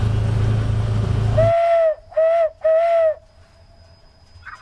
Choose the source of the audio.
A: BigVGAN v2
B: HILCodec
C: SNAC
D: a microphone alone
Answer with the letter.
D